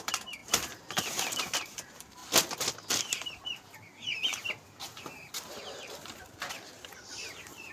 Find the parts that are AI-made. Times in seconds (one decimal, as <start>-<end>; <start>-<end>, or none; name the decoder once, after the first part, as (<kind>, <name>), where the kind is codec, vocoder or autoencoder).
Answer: 0.0-2.2 (vocoder, BigVGAN v2); 3.0-7.7